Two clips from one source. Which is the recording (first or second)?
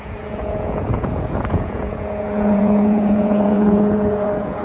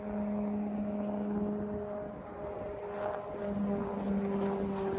second